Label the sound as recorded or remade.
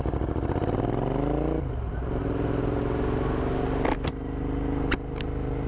recorded